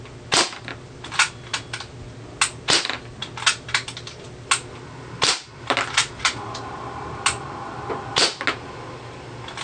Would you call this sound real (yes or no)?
yes